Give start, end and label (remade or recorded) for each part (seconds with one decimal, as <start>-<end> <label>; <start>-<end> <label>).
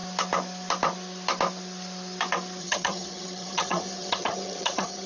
0.0-2.6 recorded; 2.6-5.1 remade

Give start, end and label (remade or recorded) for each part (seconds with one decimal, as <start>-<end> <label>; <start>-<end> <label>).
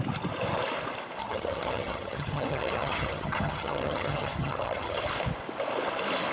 0.0-1.2 recorded; 1.2-5.0 remade; 5.0-6.3 recorded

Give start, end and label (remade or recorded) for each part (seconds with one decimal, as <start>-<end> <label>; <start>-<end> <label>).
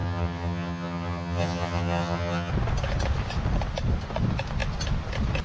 0.0-2.5 remade; 2.5-5.4 recorded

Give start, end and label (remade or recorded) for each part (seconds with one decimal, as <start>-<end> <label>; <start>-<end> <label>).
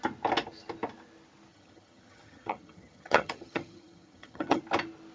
0.0-1.5 recorded; 1.5-4.6 remade; 4.6-5.1 recorded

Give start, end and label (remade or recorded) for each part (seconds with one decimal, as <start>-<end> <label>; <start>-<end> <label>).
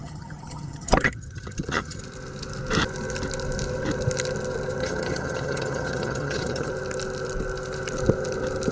0.0-2.0 remade; 2.0-4.8 recorded; 4.8-6.7 remade; 6.7-8.7 recorded